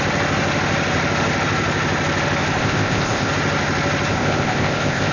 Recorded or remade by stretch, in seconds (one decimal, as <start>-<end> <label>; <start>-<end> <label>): 0.0-2.6 recorded; 2.6-3.3 remade; 3.3-4.1 recorded; 4.1-5.1 remade